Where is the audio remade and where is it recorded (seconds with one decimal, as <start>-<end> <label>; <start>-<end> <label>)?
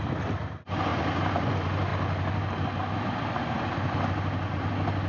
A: 0.0-5.1 recorded